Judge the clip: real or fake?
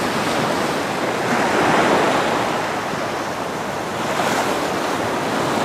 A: real